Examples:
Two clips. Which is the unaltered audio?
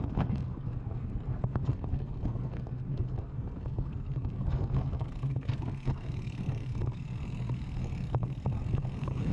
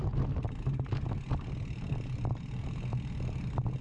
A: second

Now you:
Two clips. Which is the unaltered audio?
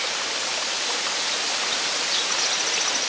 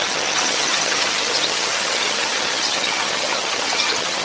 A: first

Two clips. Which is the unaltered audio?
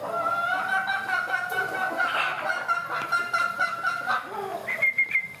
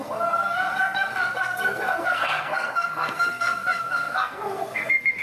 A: first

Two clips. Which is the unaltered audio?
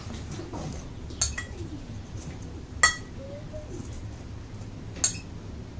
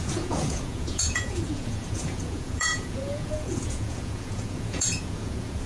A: first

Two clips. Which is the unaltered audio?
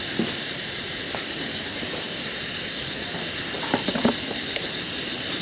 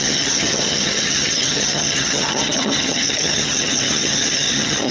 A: first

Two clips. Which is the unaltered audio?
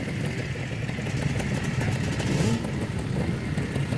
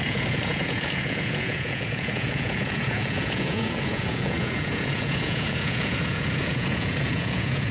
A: first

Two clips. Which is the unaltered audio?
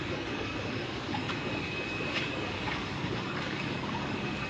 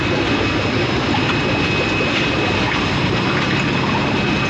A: second